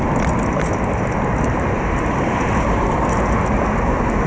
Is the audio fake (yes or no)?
no